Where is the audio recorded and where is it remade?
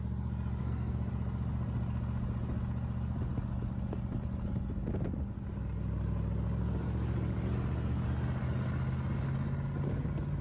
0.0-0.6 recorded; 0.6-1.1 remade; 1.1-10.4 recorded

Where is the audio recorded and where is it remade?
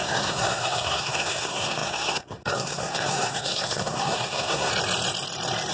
0.0-4.7 remade; 4.7-5.7 recorded